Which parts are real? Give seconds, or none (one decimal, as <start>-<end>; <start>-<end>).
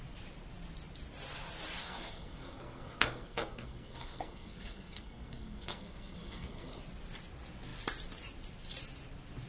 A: 0.0-1.8; 6.8-9.5